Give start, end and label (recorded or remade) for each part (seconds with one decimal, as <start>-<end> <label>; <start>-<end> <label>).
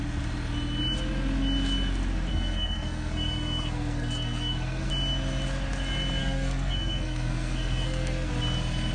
0.0-2.3 recorded; 2.3-4.9 remade; 4.9-6.2 recorded; 6.2-8.3 remade; 8.3-8.9 recorded